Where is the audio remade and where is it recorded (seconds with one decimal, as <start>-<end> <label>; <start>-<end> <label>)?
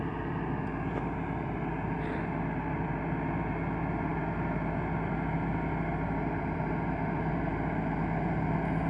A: 0.0-8.9 recorded